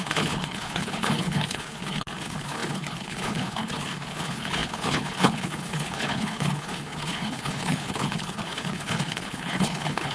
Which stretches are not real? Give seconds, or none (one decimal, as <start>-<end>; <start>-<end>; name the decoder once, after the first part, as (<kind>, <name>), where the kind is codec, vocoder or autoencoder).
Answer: 0.0-10.1 (codec, HILCodec)